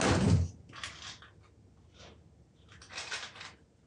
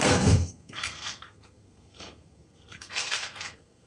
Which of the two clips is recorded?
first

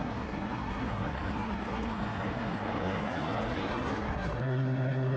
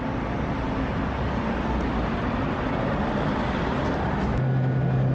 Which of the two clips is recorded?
second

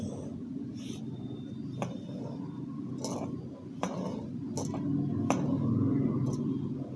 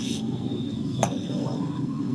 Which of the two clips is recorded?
first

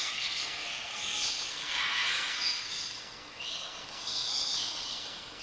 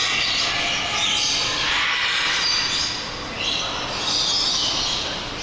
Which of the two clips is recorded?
second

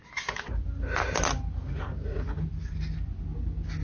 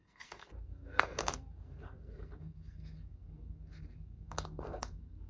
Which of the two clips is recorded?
first